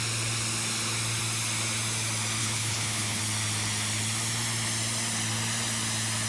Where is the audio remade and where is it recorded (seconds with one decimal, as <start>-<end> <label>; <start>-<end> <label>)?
0.0-2.4 recorded; 2.4-3.2 remade; 3.2-6.3 recorded